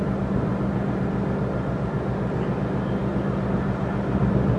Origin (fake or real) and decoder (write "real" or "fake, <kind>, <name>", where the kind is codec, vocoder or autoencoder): real